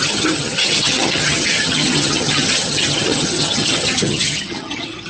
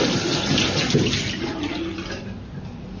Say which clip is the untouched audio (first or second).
second